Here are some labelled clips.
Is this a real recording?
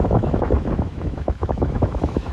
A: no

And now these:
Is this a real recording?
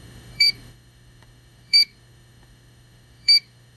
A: no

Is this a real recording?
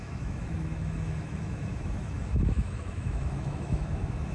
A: no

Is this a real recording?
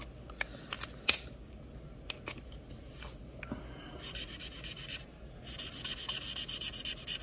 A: yes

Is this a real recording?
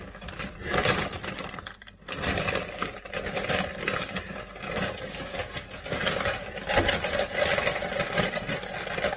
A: yes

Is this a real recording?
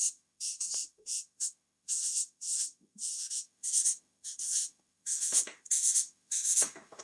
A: no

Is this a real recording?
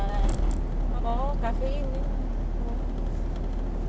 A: yes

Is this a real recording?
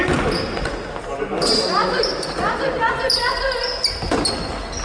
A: yes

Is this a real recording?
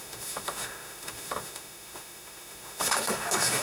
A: no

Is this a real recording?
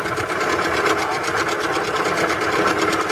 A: yes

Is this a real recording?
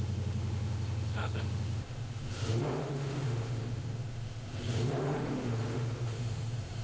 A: no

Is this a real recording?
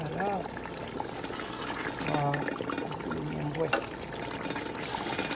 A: yes